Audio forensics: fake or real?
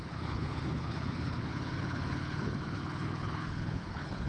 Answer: fake